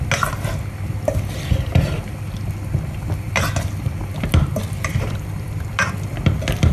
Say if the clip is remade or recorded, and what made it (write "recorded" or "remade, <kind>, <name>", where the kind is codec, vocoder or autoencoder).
recorded